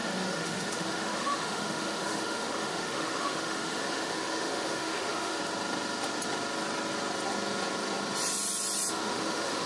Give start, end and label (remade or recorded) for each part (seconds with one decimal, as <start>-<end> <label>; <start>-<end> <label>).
0.0-5.4 remade; 5.4-8.9 recorded; 8.9-9.7 remade